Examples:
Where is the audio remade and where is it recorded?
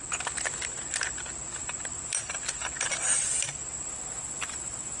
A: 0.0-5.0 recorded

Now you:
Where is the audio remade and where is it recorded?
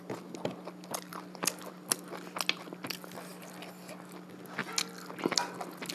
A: 0.0-1.1 recorded; 1.1-1.7 remade; 1.7-3.3 recorded; 3.3-3.8 remade; 3.8-5.9 recorded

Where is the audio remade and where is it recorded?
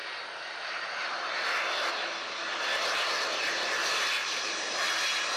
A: 0.0-4.2 recorded; 4.2-4.7 remade; 4.7-5.4 recorded